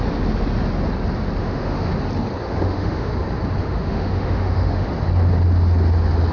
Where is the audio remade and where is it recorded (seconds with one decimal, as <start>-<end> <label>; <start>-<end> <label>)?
0.0-1.4 recorded; 1.4-1.9 remade; 1.9-2.4 recorded; 2.4-3.1 remade; 3.1-3.6 recorded; 3.6-4.9 remade; 4.9-6.3 recorded